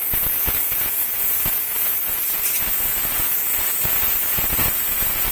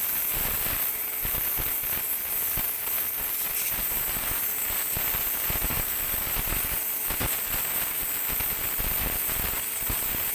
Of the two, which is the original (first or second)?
second